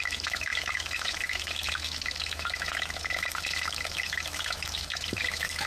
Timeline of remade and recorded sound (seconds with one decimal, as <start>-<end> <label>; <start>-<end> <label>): 0.0-5.7 remade